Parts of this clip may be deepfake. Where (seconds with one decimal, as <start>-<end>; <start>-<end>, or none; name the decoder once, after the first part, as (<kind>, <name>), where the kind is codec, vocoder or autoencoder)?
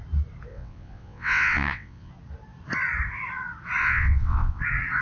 0.5-2.1 (vocoder, WaveNeXt); 3.8-4.6